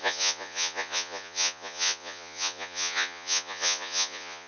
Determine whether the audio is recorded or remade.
remade